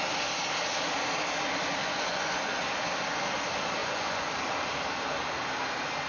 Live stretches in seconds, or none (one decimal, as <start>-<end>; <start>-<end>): 0.0-1.8; 2.6-3.8; 4.3-6.1